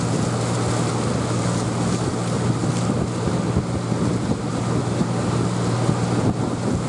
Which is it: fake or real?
real